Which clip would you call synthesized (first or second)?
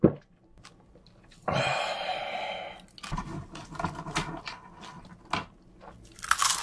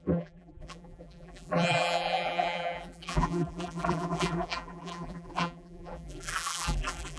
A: second